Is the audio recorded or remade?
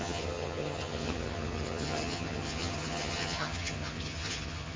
remade